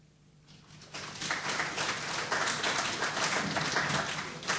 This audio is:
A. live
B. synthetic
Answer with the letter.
A